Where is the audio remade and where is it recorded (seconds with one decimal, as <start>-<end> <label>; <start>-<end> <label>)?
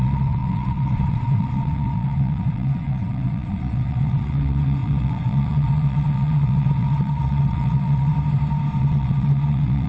0.0-8.1 remade; 8.1-8.8 recorded; 8.8-9.9 remade